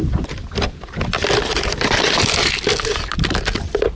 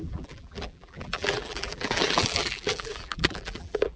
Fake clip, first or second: second